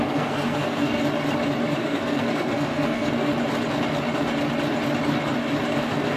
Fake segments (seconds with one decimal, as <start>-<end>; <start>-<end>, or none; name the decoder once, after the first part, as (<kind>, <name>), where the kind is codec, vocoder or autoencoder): 0.0-1.0 (codec, SNAC); 1.8-3.3; 5.8-6.2